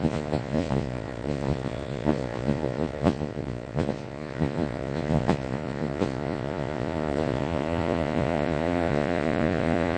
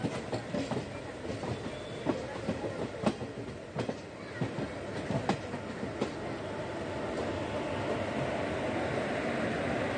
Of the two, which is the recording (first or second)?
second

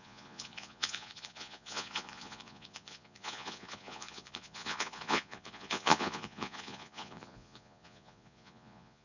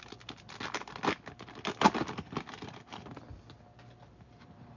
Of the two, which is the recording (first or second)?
second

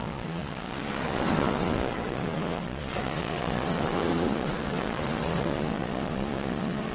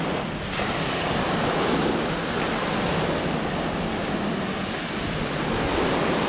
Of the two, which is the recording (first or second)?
second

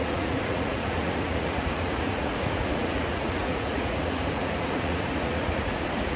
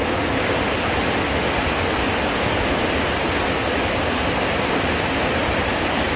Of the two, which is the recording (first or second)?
second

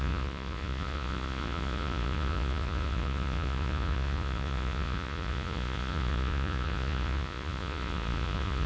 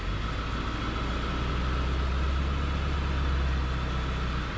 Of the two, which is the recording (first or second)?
second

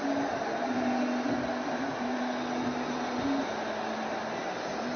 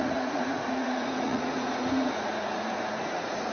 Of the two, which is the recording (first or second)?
first